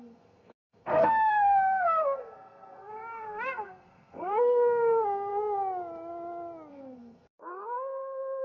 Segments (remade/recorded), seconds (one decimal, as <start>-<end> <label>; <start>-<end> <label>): 0.0-5.3 remade; 5.3-6.7 recorded; 6.7-8.4 remade

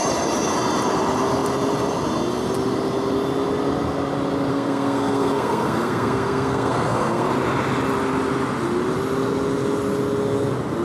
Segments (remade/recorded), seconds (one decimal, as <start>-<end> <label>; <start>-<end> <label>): 0.0-4.5 recorded; 4.5-7.3 remade; 7.3-10.8 recorded

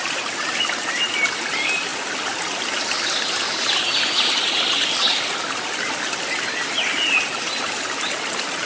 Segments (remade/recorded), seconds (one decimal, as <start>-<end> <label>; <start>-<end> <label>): 0.0-8.7 recorded